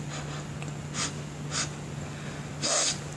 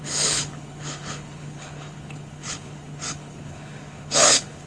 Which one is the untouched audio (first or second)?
first